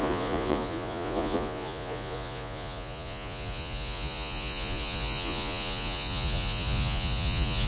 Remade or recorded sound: remade